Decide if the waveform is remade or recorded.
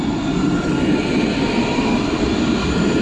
recorded